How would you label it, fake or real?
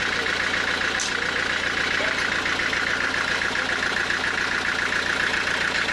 real